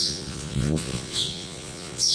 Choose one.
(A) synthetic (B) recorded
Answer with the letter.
A